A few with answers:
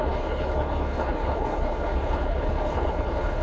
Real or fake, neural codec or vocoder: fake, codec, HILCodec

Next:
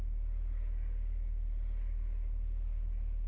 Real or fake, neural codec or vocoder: real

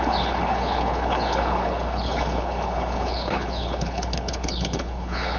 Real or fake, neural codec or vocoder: fake, codec, HILCodec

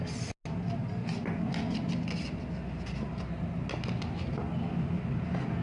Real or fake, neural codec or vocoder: real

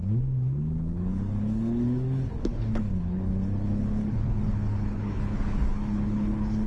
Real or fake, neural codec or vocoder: fake, codec, HILCodec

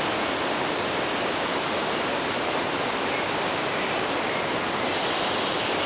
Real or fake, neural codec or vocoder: real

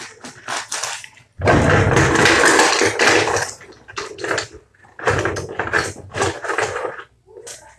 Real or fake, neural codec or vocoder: real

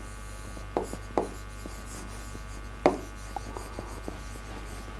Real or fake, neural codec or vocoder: real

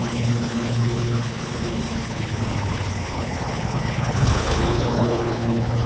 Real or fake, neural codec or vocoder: fake, codec, HILCodec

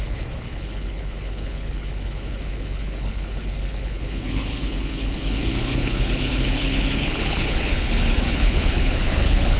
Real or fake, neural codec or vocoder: fake, codec, HILCodec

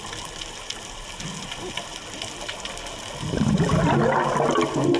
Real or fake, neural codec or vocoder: real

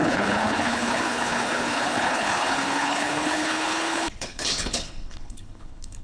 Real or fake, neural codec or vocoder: fake, codec, HILCodec